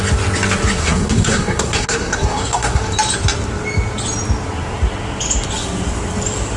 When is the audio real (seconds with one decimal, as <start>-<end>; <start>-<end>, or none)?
0.0-0.8; 2.8-6.6